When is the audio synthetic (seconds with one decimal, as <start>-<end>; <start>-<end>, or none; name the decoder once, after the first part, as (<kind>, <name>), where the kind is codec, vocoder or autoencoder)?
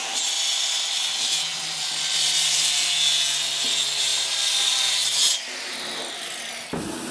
1.5-2.7 (vocoder, BigVGAN v2); 4.1-5.5